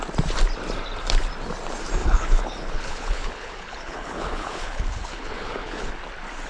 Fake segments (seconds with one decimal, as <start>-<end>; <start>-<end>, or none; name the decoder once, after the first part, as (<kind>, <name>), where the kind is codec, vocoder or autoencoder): 2.0-5.9 (codec, HILCodec)

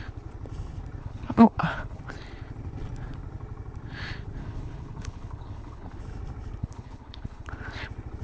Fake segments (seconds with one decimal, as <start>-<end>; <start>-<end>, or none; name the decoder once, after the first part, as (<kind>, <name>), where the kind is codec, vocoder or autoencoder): 1.0-2.0 (codec, HILCodec); 4.4-6.0; 6.6-7.5

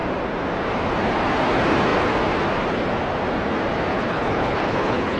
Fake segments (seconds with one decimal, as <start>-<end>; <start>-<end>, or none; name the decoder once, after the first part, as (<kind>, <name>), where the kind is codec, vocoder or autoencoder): 3.9-5.2 (codec, HILCodec)

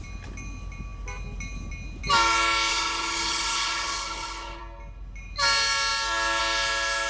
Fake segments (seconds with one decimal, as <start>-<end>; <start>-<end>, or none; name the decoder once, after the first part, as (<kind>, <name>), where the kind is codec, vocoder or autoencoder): 2.7-4.6 (codec, HILCodec)

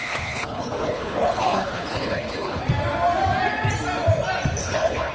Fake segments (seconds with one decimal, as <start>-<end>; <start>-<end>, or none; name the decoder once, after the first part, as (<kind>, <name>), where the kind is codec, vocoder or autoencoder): 0.0-2.6 (codec, HILCodec); 4.6-5.1